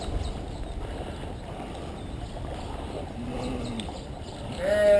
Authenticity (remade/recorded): recorded